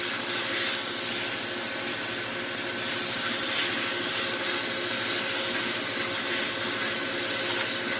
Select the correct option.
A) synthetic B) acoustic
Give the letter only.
B